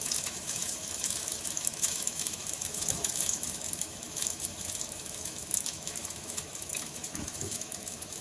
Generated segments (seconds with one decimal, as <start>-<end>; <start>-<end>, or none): 0.0-8.2

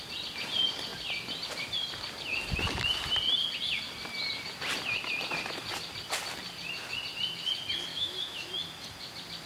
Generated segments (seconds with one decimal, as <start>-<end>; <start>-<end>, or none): 7.9-8.5